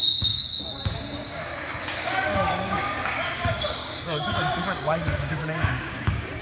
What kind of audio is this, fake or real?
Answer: fake